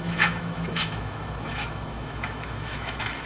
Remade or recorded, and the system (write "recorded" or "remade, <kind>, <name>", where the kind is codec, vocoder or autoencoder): remade, autoencoder, DAC-VAE